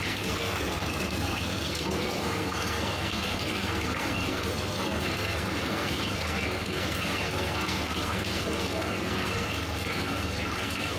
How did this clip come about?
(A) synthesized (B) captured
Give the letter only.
A